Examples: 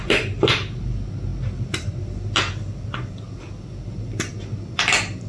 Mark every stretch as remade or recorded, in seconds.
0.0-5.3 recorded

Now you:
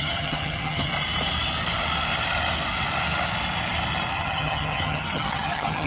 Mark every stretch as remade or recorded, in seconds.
0.0-0.9 remade; 0.9-4.1 recorded; 4.1-5.9 remade

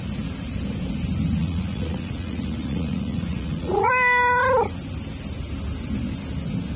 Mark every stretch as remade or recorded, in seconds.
0.0-1.4 recorded; 1.4-3.9 remade; 3.9-6.8 recorded

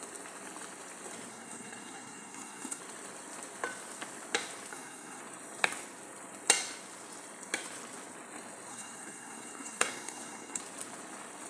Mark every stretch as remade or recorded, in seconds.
0.0-1.3 recorded; 1.3-2.8 remade; 2.8-4.7 recorded; 4.7-5.2 remade; 5.2-8.7 recorded; 8.7-10.6 remade; 10.6-11.5 recorded

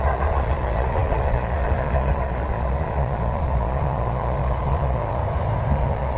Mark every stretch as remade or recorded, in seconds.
0.0-5.2 remade; 5.2-5.7 recorded; 5.7-6.2 remade